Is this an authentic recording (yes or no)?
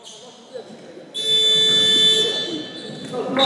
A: yes